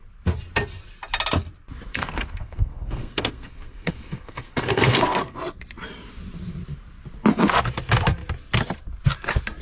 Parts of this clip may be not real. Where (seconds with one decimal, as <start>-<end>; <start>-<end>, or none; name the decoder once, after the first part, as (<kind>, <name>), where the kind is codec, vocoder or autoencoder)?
1.9-5.4 (codec, SNAC)